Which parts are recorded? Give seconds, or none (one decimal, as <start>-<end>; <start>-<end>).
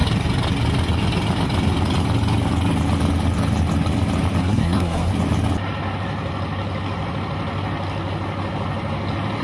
0.0-4.4; 5.1-9.4